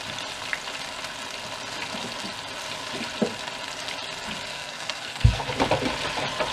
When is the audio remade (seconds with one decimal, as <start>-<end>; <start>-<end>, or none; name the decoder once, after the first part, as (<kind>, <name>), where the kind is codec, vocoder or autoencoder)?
4.5-5.5 (codec, SNAC)